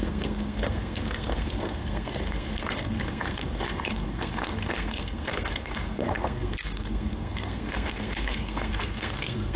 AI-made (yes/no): yes